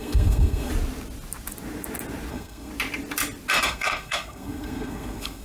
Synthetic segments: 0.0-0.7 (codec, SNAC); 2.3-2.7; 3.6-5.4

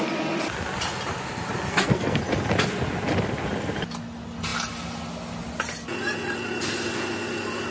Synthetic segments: 1.7-2.2 (codec, SNAC)